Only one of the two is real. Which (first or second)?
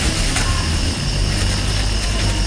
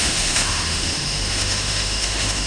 first